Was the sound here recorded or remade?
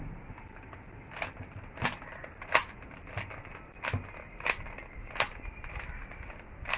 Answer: recorded